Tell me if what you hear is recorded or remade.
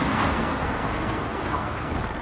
remade